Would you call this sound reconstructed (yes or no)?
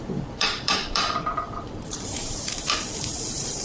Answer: yes